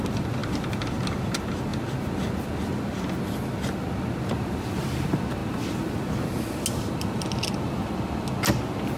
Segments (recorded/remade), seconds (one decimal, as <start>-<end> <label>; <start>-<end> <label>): 0.0-9.0 recorded